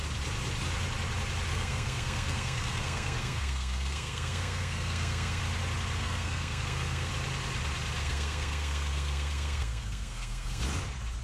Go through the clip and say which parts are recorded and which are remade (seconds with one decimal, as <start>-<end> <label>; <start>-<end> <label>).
0.0-1.5 recorded; 1.5-5.4 remade; 5.4-6.0 recorded; 6.0-7.1 remade; 7.1-8.0 recorded; 8.0-10.6 remade; 10.6-11.2 recorded